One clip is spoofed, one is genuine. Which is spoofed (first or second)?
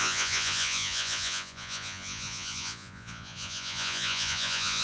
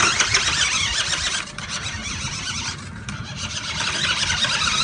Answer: first